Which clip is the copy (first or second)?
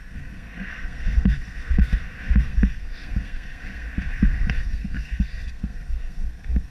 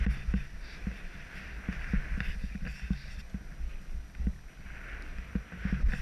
first